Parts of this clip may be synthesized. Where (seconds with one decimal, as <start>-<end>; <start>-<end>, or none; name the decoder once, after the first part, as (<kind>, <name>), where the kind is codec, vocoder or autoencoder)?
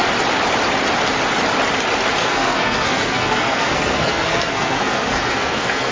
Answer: 2.2-5.9 (codec, SNAC)